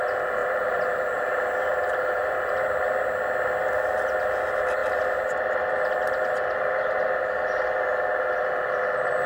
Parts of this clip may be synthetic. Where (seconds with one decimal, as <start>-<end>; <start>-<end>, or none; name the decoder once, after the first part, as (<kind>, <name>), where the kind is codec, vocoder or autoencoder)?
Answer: 0.4-2.5 (vocoder, BigVGAN v2)